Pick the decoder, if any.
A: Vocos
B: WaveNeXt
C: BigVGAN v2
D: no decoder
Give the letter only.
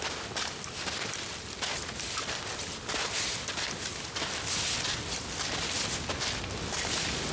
D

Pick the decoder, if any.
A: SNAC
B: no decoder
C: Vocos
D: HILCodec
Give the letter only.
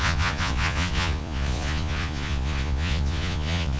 C